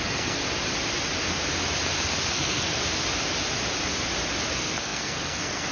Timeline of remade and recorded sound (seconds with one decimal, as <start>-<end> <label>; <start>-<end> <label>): 0.0-0.4 remade; 0.4-2.3 recorded; 2.3-2.8 remade; 2.8-4.5 recorded; 4.5-5.7 remade